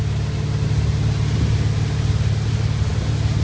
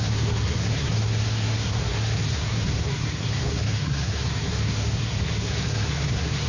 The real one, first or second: first